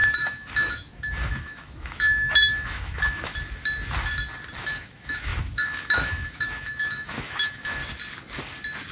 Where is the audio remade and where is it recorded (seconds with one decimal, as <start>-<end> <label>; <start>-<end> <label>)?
0.0-3.3 remade; 3.3-4.6 recorded; 4.6-7.8 remade; 7.8-8.9 recorded